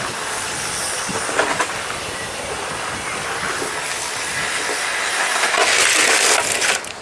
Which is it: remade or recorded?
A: recorded